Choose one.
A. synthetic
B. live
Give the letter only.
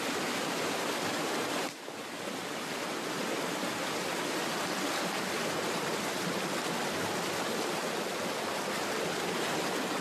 B